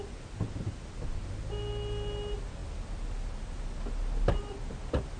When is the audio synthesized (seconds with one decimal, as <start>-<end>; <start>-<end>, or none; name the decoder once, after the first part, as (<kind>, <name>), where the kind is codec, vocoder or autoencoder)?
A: none